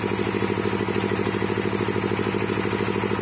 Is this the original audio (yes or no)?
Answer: yes